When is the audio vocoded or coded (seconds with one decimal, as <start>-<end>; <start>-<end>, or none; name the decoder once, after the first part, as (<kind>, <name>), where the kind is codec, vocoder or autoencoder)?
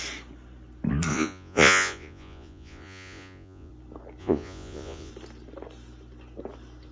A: 1.1-3.7 (vocoder, Vocos); 4.2-5.1